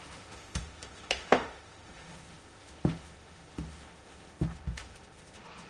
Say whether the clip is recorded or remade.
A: remade